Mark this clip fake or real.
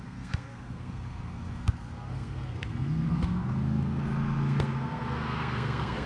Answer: fake